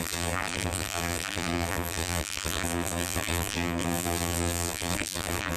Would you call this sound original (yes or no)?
no